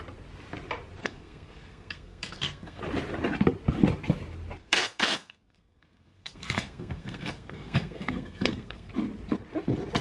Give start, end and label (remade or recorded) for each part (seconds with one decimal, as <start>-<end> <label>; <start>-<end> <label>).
0.0-1.0 recorded; 1.0-2.8 remade; 2.8-4.6 recorded; 4.6-8.9 remade; 8.9-10.0 recorded